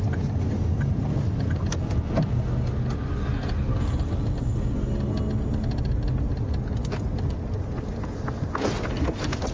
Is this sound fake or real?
real